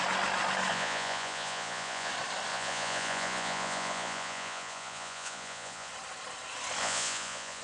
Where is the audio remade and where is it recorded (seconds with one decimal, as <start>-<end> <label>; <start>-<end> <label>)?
0.0-0.7 recorded; 0.7-2.1 remade; 2.1-2.5 recorded; 2.5-5.9 remade; 5.9-6.8 recorded; 6.8-7.6 remade